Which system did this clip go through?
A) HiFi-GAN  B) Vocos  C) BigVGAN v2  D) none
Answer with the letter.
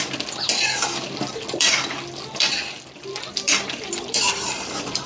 C